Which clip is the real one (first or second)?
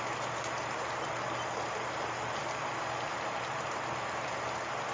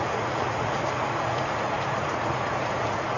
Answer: first